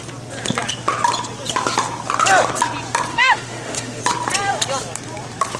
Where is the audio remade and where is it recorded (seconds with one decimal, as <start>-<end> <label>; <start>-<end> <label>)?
0.0-3.1 recorded; 3.1-4.0 remade; 4.0-5.6 recorded